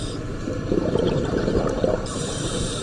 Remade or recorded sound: remade